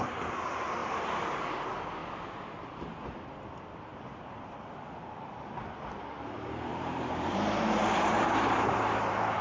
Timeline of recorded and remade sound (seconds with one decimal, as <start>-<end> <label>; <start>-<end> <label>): 0.0-6.7 recorded; 6.7-8.8 remade; 8.8-9.4 recorded